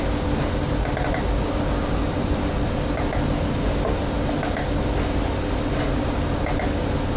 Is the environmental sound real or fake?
real